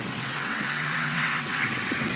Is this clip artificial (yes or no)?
yes